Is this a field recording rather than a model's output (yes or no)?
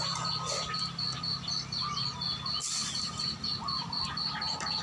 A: yes